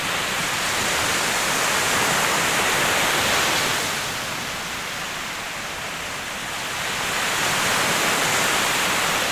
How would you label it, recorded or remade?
recorded